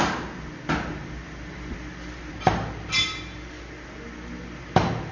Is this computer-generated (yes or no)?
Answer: no